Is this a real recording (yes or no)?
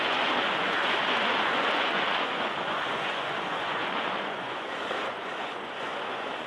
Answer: no